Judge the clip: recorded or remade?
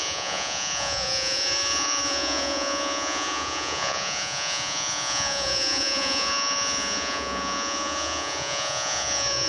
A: remade